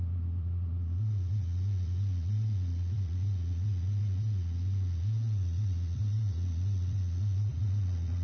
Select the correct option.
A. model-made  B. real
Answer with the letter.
A